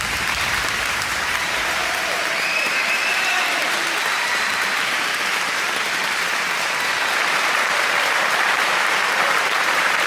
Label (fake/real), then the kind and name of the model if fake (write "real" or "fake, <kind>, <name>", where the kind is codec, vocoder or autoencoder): fake, vocoder, BigVGAN v2